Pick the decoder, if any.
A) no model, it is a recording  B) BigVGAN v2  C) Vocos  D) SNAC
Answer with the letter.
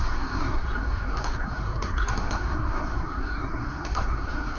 D